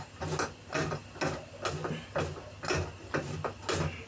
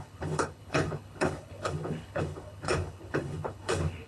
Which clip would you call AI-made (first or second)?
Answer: second